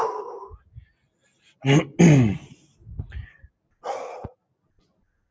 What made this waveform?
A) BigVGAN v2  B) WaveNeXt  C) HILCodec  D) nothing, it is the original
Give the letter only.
D